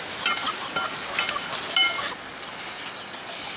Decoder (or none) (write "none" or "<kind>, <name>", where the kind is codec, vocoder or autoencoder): none